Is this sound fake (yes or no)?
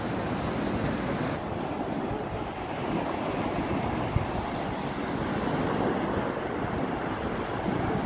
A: no